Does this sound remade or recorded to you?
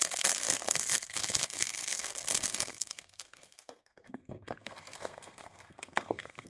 remade